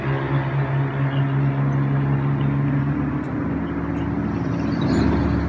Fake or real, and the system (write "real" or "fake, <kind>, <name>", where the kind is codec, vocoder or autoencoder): real